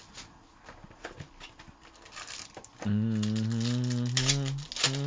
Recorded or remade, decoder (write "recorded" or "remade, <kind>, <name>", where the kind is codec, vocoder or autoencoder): recorded